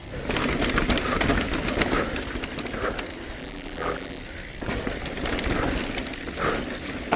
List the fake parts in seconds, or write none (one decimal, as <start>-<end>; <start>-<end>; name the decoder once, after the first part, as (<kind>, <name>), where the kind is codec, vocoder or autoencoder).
3.4-4.2 (vocoder, BigVGAN v2)